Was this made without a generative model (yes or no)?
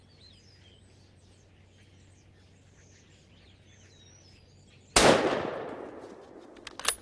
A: yes